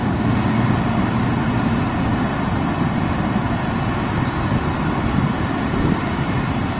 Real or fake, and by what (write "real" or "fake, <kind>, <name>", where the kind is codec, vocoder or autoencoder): real